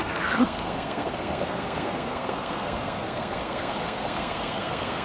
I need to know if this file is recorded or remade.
remade